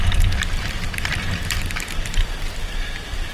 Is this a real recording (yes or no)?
yes